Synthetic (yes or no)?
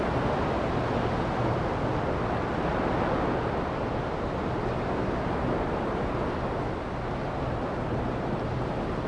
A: no